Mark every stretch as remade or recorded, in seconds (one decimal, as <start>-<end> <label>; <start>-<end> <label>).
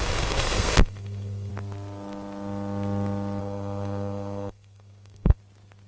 0.0-1.5 remade; 1.5-3.4 recorded; 3.4-5.4 remade; 5.4-5.9 recorded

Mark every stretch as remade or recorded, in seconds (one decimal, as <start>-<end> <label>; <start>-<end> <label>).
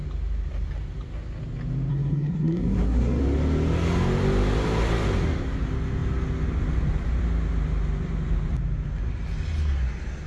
0.0-1.9 recorded; 1.9-3.2 remade; 3.2-10.3 recorded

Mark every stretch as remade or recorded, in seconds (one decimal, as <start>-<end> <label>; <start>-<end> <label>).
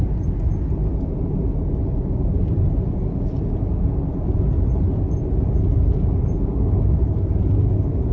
0.0-8.1 recorded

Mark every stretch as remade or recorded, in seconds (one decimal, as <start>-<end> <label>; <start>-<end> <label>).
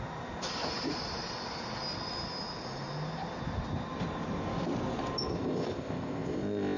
0.0-5.3 recorded; 5.3-6.8 remade